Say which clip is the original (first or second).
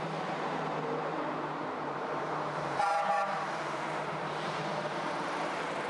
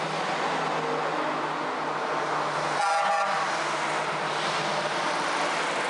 second